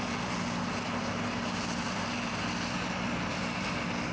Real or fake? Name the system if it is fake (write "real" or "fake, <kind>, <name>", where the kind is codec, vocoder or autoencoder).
real